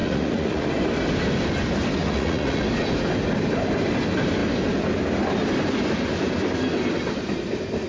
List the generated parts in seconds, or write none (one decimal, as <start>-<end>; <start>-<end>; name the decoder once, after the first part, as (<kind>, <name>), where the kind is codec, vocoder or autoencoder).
0.0-0.7 (vocoder, Vocos); 2.0-2.6